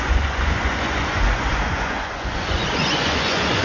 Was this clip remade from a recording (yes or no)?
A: yes